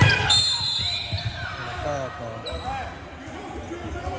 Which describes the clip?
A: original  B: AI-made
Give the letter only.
A